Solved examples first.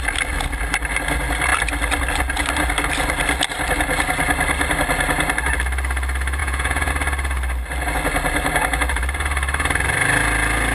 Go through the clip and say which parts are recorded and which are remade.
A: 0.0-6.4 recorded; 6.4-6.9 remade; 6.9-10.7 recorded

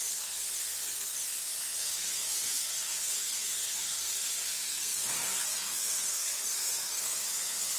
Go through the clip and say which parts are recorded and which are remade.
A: 0.0-7.8 remade

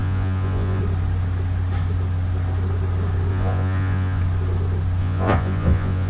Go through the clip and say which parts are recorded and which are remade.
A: 0.0-0.8 remade; 0.8-3.3 recorded; 3.3-4.2 remade; 4.2-5.0 recorded; 5.0-6.1 remade

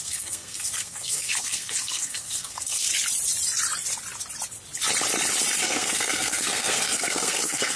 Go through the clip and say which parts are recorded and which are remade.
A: 0.0-2.9 remade; 2.9-5.6 recorded; 5.6-7.8 remade

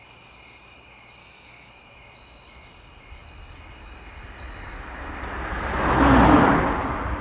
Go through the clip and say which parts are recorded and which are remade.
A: 0.0-1.2 recorded; 1.2-1.7 remade; 1.7-7.2 recorded

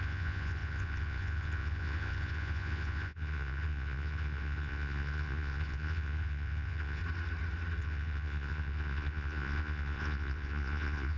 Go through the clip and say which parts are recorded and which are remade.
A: 0.0-7.0 remade; 7.0-7.8 recorded; 7.8-11.2 remade

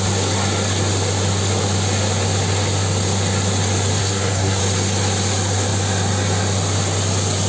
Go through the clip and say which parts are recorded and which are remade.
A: 0.0-4.0 recorded; 4.0-4.6 remade; 4.6-7.5 recorded